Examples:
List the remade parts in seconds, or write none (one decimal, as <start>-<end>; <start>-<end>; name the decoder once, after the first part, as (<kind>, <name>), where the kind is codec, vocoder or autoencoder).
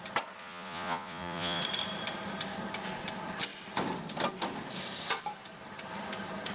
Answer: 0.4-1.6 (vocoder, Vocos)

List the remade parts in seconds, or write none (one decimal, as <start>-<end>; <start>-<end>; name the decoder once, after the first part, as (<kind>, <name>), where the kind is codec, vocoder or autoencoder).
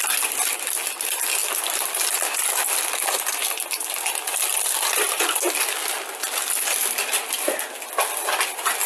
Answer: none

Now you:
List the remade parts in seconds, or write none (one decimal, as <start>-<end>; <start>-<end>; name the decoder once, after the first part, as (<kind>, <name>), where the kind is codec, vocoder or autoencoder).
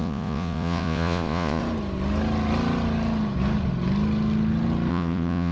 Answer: 0.0-1.6 (vocoder, Vocos); 4.9-5.5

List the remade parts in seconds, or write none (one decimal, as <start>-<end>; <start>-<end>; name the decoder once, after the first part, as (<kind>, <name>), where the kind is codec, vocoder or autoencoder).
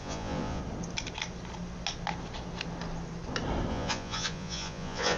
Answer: 0.0-0.6 (vocoder, Vocos); 3.7-5.2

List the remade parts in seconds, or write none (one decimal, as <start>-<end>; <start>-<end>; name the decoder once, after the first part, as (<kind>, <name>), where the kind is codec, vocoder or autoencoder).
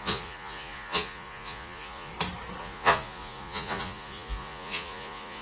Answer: 0.0-2.1 (vocoder, Vocos); 2.6-5.4